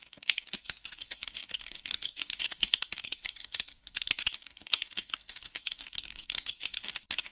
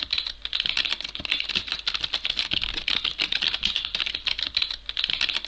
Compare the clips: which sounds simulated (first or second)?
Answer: first